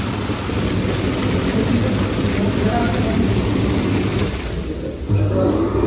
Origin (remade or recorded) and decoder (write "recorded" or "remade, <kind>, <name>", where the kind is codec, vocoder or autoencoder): recorded